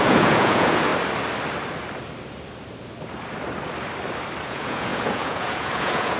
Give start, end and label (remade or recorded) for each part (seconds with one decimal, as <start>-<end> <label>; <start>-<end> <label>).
0.0-0.9 remade; 0.9-4.4 recorded; 4.4-6.2 remade